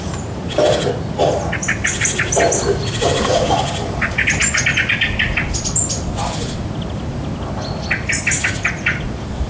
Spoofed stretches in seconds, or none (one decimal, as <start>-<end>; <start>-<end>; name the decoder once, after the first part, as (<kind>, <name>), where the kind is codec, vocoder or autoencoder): none